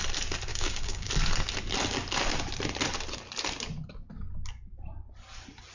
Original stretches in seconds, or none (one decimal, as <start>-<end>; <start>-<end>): 0.0-0.5; 1.1-5.7